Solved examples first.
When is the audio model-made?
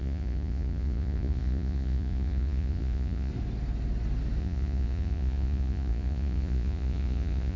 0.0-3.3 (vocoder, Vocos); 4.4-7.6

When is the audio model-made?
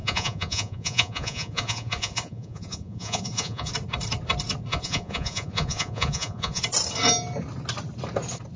0.0-3.7 (vocoder, Vocos); 4.7-6.6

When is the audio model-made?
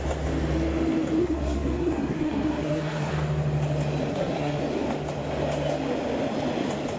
1.2-3.1 (codec, SNAC); 4.1-4.6